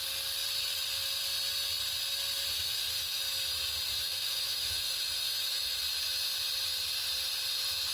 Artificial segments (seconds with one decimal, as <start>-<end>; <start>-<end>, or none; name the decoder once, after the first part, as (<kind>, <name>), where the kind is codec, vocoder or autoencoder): 2.5-3.2 (autoencoder, DAC-VAE); 3.9-5.8